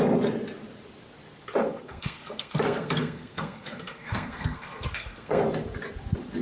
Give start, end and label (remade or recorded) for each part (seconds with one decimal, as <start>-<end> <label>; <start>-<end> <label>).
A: 0.0-1.6 recorded; 1.6-5.4 remade; 5.4-6.4 recorded